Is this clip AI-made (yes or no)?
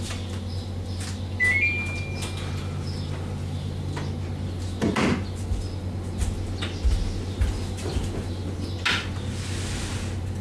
no